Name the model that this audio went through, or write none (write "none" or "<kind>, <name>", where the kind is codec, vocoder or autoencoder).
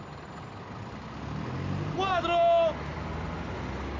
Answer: none